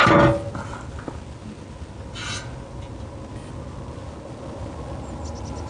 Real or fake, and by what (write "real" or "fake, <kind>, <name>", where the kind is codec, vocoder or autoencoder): real